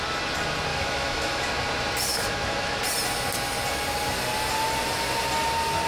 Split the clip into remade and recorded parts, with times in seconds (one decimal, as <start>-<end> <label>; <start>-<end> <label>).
0.0-0.7 recorded; 0.7-1.5 remade; 1.5-2.1 recorded; 2.1-2.8 remade; 2.8-5.9 recorded